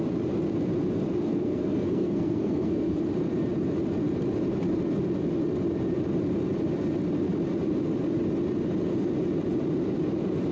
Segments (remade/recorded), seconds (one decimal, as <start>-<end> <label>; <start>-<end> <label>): 0.0-1.3 recorded; 1.3-3.0 remade; 3.0-10.5 recorded